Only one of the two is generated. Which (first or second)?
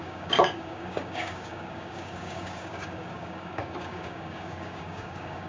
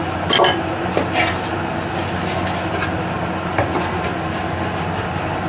first